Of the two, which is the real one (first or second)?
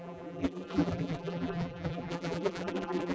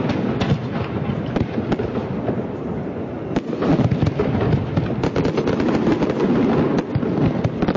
second